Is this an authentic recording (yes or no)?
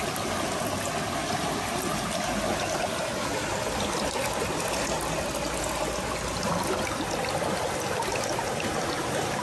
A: yes